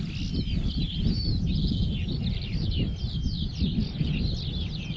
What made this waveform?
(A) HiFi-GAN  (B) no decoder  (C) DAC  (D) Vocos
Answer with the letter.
B